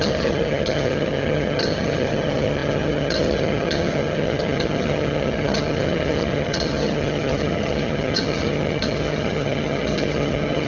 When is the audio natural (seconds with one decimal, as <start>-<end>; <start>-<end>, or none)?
none